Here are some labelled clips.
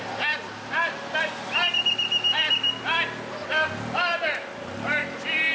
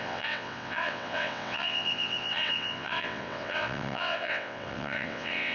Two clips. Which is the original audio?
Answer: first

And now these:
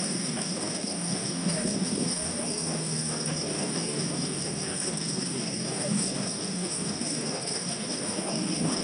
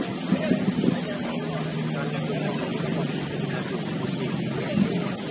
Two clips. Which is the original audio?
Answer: second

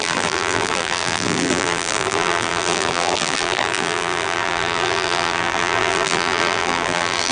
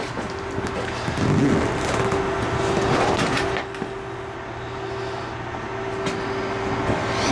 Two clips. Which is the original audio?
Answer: second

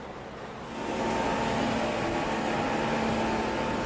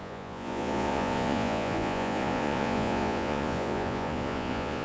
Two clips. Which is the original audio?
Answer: first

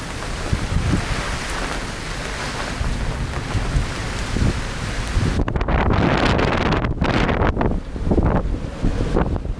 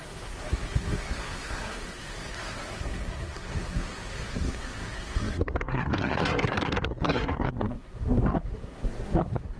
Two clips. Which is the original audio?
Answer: first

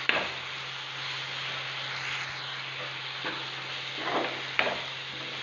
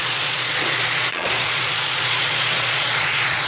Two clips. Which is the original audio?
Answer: first